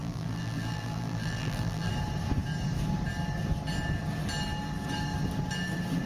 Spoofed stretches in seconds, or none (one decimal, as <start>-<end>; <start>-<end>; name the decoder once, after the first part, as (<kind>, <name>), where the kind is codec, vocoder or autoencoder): 0.0-1.9 (vocoder, BigVGAN v2)